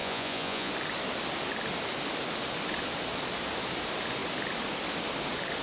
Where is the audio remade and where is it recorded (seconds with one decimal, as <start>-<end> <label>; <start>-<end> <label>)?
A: 0.0-0.7 remade; 0.7-5.6 recorded